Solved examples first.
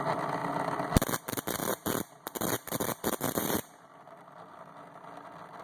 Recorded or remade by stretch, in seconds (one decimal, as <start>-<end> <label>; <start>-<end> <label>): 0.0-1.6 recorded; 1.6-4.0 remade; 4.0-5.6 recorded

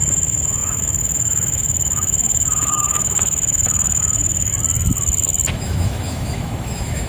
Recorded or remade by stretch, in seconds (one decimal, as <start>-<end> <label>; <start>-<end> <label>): 0.0-4.5 remade; 4.5-5.5 recorded; 5.5-7.1 remade

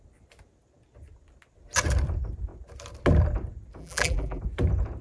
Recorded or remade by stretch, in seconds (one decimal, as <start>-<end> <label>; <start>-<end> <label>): 0.0-3.8 recorded; 3.8-4.4 remade; 4.4-5.0 recorded

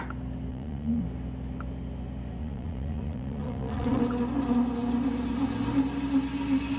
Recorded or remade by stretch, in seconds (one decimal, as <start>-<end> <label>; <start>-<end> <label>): 0.0-0.5 recorded; 0.5-1.0 remade; 1.0-2.4 recorded; 2.4-4.0 remade; 4.0-6.8 recorded

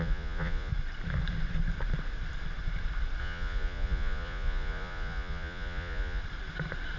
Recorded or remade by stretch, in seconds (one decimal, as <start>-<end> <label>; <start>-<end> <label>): 0.0-0.7 remade; 0.7-3.2 recorded; 3.2-6.2 remade; 6.2-7.0 recorded

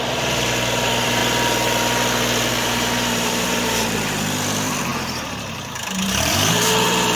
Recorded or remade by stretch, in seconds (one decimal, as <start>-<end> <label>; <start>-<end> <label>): 0.0-1.2 remade; 1.2-2.5 recorded; 2.5-7.2 remade

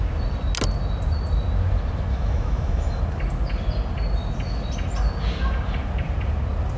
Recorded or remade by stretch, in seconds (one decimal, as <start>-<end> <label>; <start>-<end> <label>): 0.0-2.1 recorded; 2.1-3.0 remade; 3.0-6.8 recorded

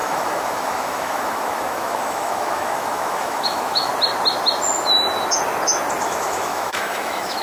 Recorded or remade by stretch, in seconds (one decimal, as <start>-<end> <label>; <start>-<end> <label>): 0.0-3.9 remade; 3.9-6.0 recorded; 6.0-7.4 remade